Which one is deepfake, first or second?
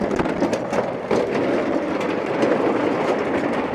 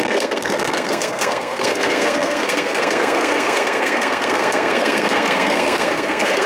second